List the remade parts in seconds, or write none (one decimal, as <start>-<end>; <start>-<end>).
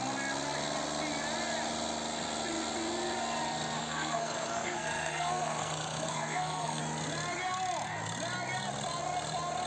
3.8-6.8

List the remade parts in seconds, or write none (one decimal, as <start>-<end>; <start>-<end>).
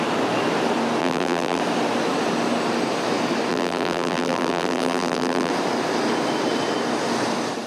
1.0-1.6; 3.5-5.5